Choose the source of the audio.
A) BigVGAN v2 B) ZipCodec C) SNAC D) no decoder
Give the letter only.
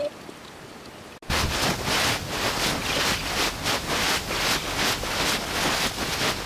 D